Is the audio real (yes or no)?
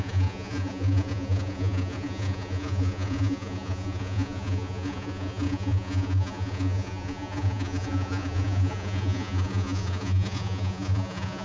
no